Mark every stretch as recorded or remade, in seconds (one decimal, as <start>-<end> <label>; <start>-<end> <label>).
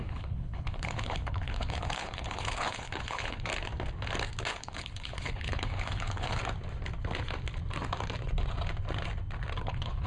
0.0-3.5 remade; 3.5-4.5 recorded; 4.5-6.4 remade; 6.4-9.6 recorded; 9.6-10.1 remade